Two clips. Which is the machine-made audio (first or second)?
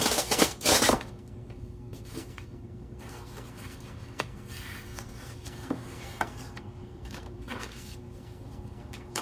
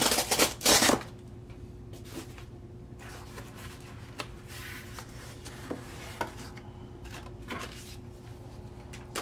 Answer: first